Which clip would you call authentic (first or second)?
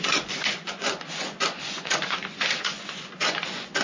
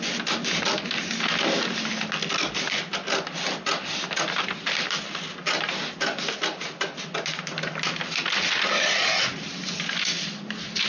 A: second